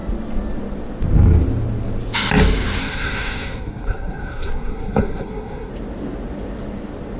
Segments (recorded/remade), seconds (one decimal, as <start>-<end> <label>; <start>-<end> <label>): 0.0-2.8 recorded; 2.8-5.7 remade; 5.7-7.2 recorded